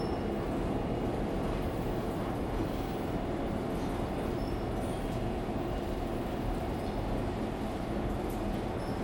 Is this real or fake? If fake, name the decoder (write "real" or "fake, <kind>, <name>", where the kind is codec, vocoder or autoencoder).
real